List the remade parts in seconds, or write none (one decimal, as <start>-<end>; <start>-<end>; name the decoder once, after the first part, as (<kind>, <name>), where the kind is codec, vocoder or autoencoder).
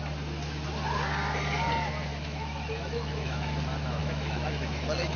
2.1-3.6 (autoencoder, DAC-VAE); 4.0-5.2